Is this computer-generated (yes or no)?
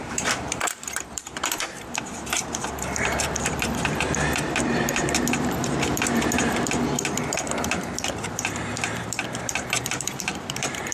yes